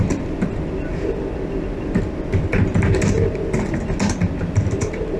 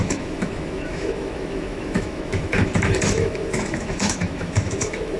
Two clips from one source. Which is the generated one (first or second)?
second